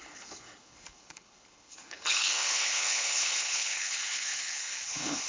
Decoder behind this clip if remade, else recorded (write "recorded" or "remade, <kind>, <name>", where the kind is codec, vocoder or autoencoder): remade, codec, HILCodec